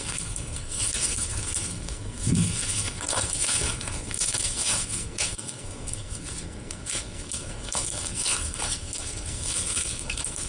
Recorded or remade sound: remade